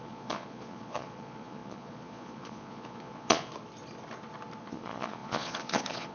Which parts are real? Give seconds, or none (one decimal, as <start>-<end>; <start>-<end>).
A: 3.5-4.6